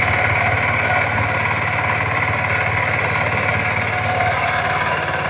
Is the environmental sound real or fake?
real